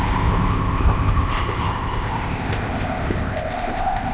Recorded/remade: remade